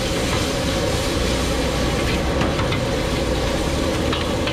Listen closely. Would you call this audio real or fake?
real